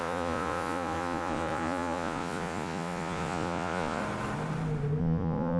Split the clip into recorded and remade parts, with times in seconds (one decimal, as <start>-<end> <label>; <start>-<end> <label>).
0.0-4.0 remade; 4.0-5.0 recorded; 5.0-5.6 remade